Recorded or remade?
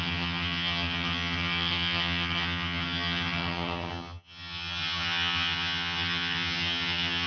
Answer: remade